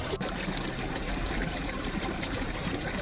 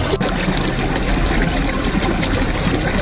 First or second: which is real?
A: second